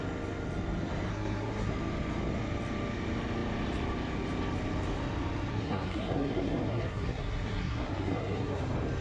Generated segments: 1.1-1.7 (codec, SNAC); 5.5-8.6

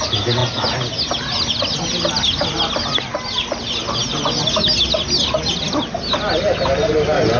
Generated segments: none

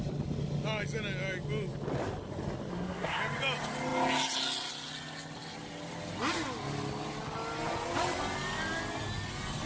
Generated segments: 2.7-3.2 (codec, SNAC)

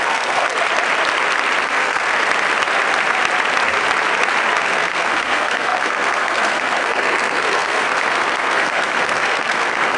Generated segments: 0.0-0.5 (codec, SNAC); 1.6-2.2; 4.6-10.0

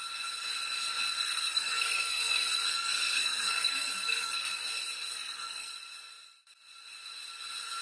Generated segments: 1.2-4.6 (codec, SNAC); 5.1-5.7

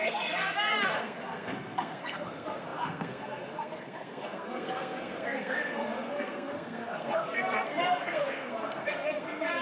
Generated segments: 0.0-9.6 (codec, SNAC)